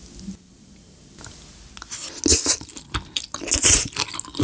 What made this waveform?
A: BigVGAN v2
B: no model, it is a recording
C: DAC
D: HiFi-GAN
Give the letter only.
B